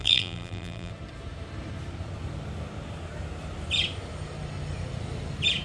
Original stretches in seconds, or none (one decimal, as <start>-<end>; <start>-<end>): 0.9-5.6